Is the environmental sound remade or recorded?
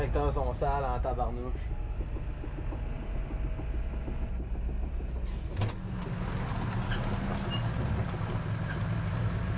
recorded